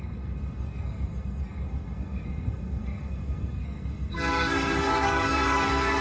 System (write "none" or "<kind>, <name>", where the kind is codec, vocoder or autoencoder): codec, SNAC